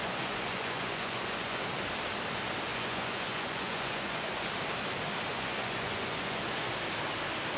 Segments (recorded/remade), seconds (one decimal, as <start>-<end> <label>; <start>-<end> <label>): 0.0-1.6 remade; 1.6-2.7 recorded; 2.7-4.5 remade; 4.5-5.3 recorded; 5.3-6.7 remade; 6.7-7.6 recorded